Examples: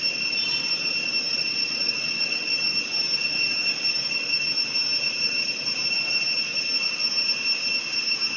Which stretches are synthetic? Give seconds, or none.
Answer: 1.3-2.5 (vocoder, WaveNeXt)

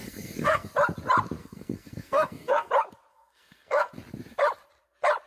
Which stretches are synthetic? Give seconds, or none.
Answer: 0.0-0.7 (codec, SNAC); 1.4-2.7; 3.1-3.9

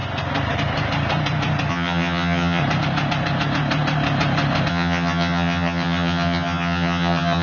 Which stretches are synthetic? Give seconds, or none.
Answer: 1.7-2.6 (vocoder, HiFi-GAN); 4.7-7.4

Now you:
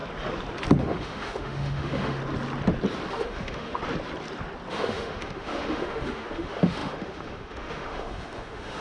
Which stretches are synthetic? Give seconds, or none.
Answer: 0.8-2.2 (autoencoder, DAC-VAE); 3.1-3.8; 4.7-8.8

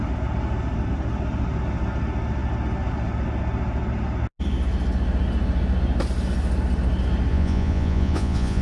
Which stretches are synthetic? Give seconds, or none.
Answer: 7.3-8.6 (vocoder, Vocos)

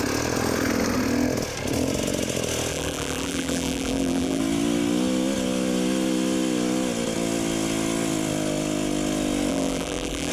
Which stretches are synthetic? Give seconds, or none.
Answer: 2.7-4.4 (vocoder, BigVGAN v2); 9.5-10.3